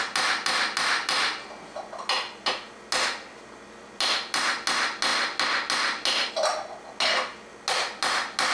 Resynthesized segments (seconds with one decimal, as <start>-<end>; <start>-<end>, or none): none